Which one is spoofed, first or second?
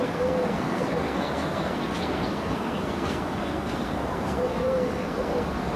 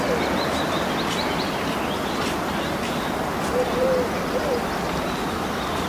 first